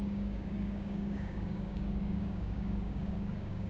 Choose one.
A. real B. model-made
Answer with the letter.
B